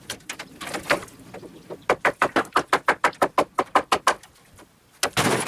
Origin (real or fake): real